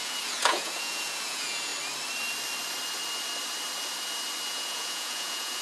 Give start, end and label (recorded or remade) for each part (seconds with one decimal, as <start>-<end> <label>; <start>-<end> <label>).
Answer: 0.0-1.7 remade; 1.7-4.5 recorded; 4.5-5.6 remade